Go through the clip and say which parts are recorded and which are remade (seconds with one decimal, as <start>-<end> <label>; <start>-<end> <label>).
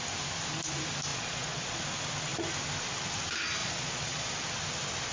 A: 0.0-1.1 recorded; 1.1-1.8 remade; 1.8-3.6 recorded; 3.6-4.3 remade; 4.3-5.1 recorded